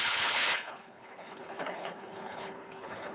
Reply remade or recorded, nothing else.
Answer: remade